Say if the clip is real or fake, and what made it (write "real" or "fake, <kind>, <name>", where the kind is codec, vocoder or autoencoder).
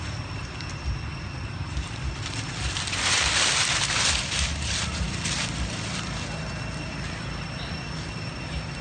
real